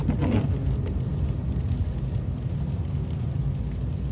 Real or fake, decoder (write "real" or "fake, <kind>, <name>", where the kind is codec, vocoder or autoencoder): real